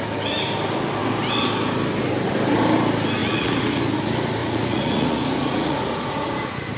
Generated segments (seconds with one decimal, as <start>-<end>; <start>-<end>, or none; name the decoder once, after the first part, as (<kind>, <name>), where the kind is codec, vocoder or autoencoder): 3.2-3.8 (vocoder, Vocos); 4.4-6.3